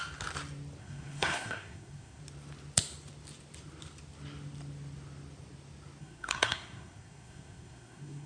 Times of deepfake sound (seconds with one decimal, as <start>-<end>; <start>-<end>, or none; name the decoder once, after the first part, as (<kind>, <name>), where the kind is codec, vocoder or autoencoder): 0.8-2.2 (codec, SNAC); 6.0-8.3